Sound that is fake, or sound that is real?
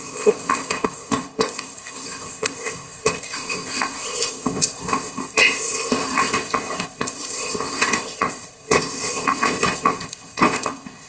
fake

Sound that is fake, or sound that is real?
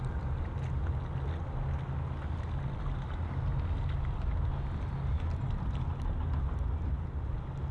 real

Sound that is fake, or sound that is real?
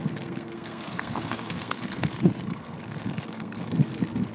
fake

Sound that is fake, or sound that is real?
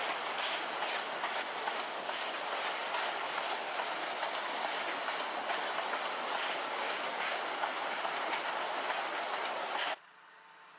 real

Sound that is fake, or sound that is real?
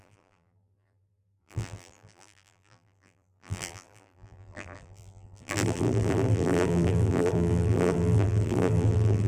fake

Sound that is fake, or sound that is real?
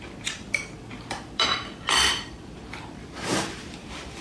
fake